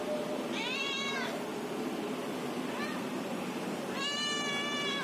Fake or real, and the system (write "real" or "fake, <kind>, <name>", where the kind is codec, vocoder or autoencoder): real